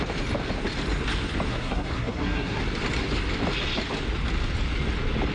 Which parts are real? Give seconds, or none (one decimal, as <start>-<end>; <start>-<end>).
0.0-1.5; 2.6-5.3